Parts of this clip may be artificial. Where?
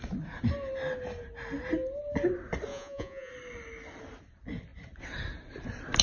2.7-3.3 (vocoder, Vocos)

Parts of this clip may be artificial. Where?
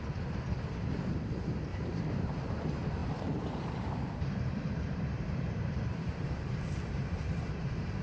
1.7-2.5 (vocoder, BigVGAN v2); 3.0-7.3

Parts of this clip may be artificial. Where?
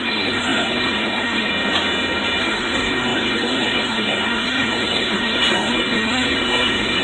0.0-1.5 (codec, SNAC); 2.4-7.0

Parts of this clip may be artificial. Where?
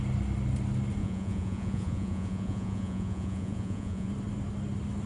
1.0-4.1 (vocoder, Vocos)